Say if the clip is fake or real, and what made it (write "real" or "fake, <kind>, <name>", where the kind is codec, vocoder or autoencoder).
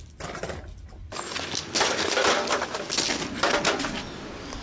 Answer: real